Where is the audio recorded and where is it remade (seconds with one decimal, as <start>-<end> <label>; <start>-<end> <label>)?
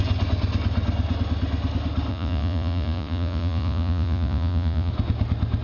0.0-2.1 recorded; 2.1-4.9 remade; 4.9-5.6 recorded